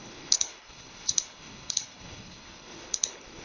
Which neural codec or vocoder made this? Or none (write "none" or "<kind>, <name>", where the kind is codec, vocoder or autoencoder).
codec, HILCodec